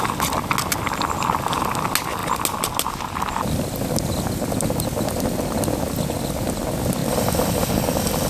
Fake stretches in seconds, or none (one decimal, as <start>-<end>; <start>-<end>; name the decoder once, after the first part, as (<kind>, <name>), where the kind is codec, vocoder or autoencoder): none